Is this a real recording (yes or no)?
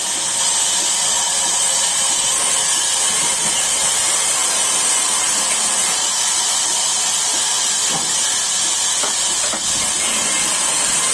yes